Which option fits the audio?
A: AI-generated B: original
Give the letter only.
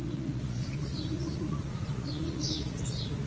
A